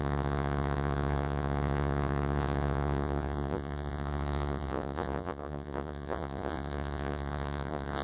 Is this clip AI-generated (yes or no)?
yes